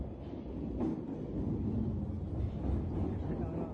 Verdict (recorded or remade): recorded